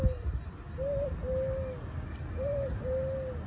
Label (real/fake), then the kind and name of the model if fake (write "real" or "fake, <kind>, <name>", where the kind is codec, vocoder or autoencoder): real